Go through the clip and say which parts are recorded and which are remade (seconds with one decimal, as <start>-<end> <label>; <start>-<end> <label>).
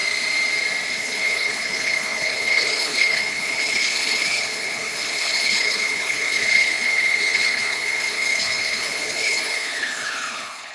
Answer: 0.0-0.9 recorded; 0.9-10.7 remade